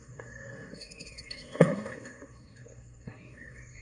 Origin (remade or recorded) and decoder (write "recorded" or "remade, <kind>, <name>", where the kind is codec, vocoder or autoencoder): remade, codec, SNAC